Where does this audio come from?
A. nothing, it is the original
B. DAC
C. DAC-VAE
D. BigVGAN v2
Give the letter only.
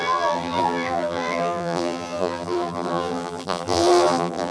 D